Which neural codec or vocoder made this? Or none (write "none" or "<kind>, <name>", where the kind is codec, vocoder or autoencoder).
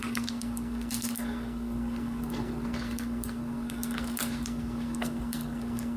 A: codec, SNAC